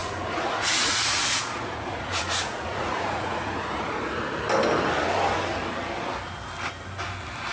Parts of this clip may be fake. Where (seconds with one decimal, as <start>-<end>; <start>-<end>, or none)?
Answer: 0.0-4.2